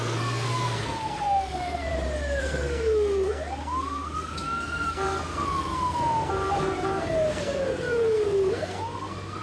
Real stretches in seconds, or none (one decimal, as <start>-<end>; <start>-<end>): 1.9-2.4